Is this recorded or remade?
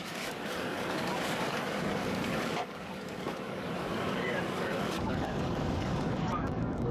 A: remade